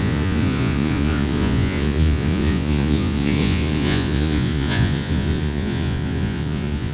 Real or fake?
fake